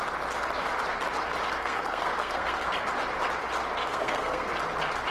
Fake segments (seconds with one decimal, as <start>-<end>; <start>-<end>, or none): 1.5-2.7; 3.8-4.5